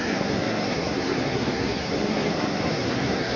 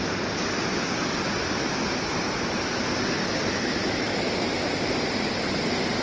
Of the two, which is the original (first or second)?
second